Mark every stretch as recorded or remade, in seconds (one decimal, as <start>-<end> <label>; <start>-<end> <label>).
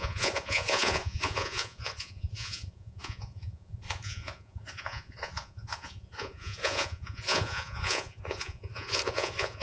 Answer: 0.0-9.6 remade